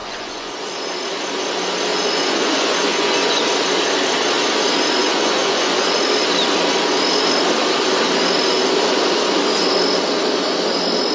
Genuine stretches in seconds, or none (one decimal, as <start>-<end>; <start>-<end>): 0.9-1.9; 3.4-5.0; 5.9-11.1